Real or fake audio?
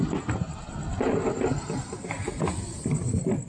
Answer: real